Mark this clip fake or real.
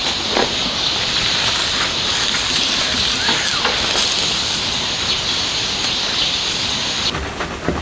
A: real